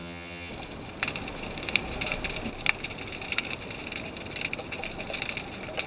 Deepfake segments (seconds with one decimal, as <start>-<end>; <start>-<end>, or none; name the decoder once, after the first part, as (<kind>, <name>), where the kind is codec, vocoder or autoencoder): 0.0-0.5 (vocoder, HiFi-GAN)